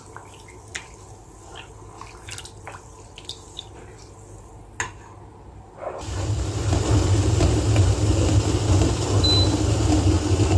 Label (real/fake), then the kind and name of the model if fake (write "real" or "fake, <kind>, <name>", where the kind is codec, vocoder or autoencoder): real